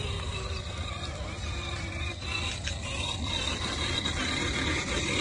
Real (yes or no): yes